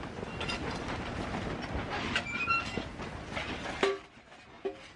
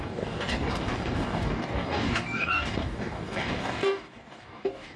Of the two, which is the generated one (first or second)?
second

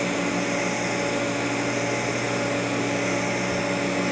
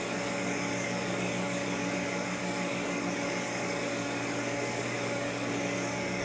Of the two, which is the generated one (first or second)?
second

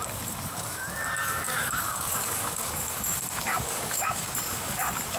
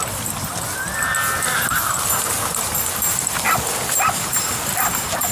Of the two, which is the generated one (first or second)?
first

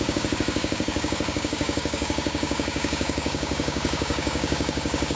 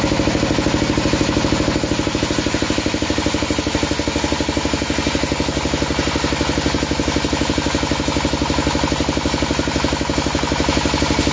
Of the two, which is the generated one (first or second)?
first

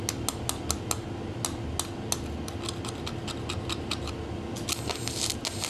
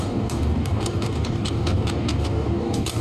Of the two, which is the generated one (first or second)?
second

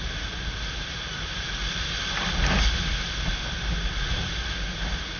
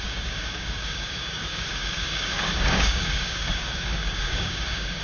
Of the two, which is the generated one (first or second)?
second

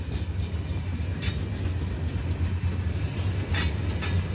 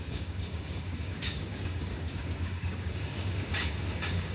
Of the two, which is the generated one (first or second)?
second